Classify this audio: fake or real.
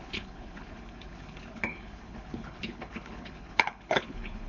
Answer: fake